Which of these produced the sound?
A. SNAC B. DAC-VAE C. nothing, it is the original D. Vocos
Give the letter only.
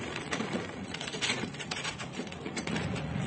D